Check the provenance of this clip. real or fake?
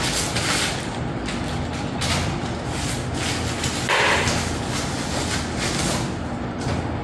real